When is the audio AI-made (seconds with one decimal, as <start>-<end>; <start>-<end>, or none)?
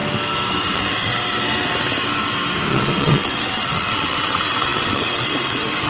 0.6-1.1; 2.7-5.9